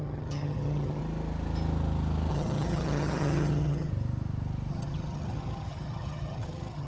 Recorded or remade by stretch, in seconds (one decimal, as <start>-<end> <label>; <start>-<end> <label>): 0.0-1.0 remade; 1.0-2.3 recorded; 2.3-3.9 remade; 3.9-4.7 recorded; 4.7-6.9 remade